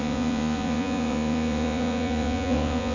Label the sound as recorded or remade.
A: remade